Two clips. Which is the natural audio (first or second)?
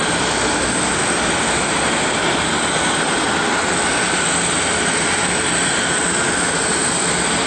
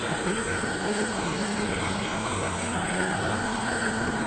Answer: first